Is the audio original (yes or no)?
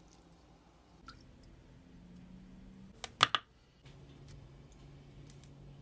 yes